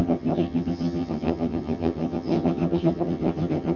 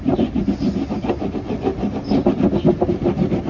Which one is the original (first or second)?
second